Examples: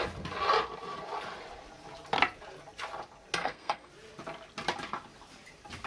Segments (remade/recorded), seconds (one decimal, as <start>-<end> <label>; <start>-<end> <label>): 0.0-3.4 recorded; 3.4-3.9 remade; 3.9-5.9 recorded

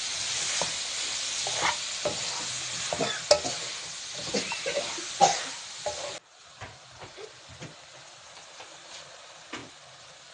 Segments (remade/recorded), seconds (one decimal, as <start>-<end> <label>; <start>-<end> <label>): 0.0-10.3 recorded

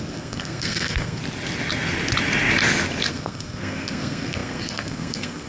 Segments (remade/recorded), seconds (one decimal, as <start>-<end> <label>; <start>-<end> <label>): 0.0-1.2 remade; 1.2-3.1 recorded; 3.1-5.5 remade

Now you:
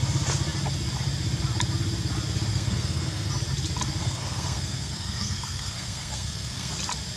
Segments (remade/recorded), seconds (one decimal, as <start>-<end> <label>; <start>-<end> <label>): 0.0-2.5 recorded; 2.5-3.3 remade; 3.3-4.0 recorded; 4.0-6.7 remade; 6.7-7.2 recorded

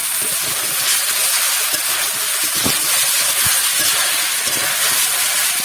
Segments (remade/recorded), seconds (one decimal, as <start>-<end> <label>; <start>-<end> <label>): 0.0-5.6 recorded